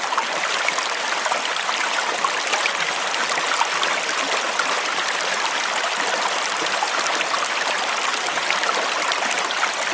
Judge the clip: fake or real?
real